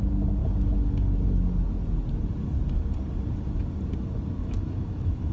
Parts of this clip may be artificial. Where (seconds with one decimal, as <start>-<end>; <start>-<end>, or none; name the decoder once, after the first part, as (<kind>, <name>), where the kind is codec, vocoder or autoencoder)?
4.4-5.3 (autoencoder, DAC-VAE)